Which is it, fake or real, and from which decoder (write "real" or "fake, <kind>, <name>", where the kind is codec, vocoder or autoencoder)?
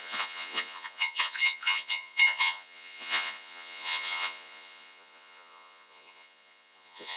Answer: fake, vocoder, Vocos